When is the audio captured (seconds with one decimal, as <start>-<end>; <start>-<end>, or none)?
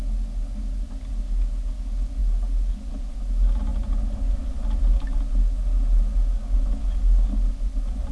0.0-8.1